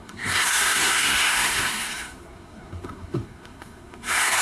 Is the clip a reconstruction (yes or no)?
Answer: yes